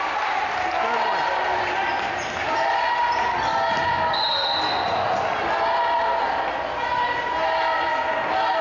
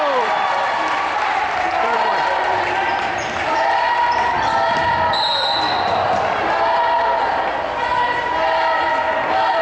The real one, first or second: first